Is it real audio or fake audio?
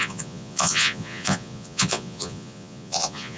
fake